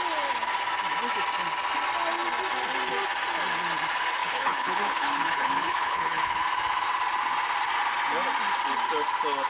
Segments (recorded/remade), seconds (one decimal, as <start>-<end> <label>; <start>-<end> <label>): 0.0-4.2 recorded; 4.2-6.4 remade; 6.4-9.5 recorded